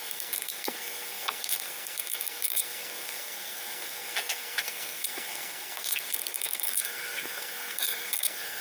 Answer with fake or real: fake